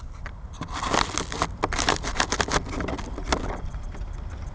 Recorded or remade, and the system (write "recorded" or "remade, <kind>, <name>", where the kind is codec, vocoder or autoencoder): recorded